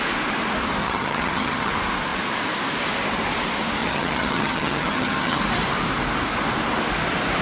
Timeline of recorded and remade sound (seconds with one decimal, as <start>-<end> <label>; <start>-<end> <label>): 0.0-0.8 recorded; 0.8-1.7 remade; 1.7-3.8 recorded; 3.8-5.4 remade; 5.4-7.4 recorded